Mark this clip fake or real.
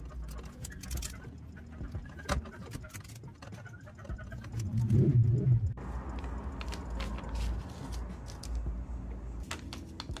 real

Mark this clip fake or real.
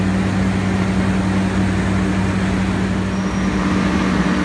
real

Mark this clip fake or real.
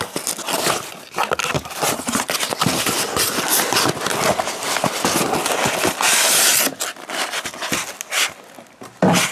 real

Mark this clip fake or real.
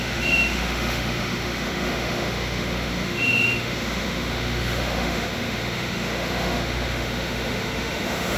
fake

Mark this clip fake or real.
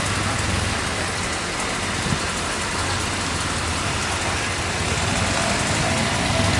real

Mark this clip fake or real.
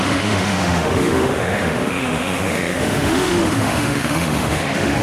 fake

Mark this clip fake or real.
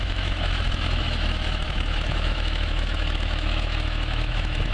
fake